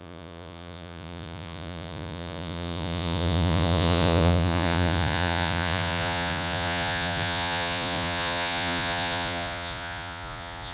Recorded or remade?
remade